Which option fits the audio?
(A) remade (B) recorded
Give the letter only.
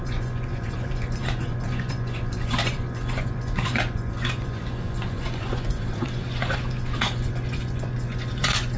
A